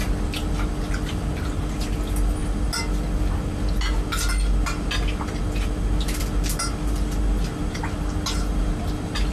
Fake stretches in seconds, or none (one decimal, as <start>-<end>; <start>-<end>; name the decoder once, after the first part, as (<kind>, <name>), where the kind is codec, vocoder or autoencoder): none